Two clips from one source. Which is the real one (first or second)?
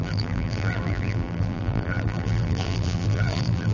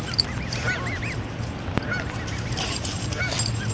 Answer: second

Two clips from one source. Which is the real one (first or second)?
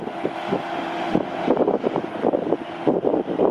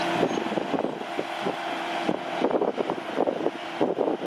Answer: second